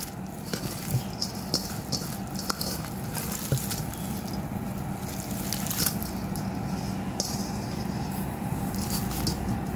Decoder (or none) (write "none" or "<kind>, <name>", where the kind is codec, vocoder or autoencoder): none